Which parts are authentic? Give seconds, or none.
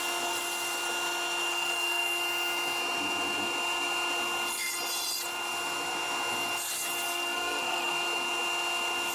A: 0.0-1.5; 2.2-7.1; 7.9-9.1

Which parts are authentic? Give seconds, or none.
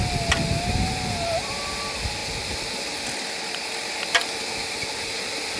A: 0.0-5.6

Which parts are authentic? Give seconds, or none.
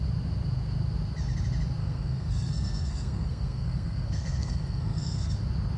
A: 0.0-1.8; 5.3-5.8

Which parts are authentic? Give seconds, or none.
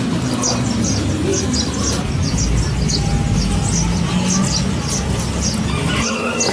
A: 0.0-6.5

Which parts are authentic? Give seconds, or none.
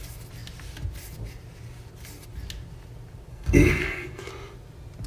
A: 0.0-3.3; 4.3-5.1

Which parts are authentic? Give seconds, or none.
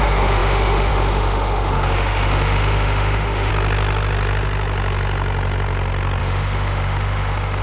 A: 3.5-6.2